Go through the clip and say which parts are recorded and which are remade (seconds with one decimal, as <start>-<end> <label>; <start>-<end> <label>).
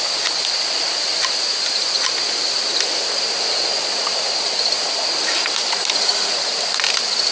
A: 0.0-7.3 recorded